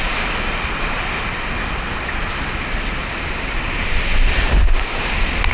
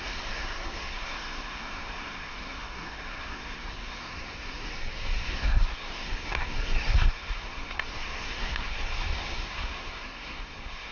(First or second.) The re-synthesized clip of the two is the second